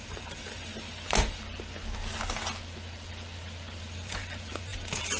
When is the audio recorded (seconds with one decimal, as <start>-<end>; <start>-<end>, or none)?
0.7-3.8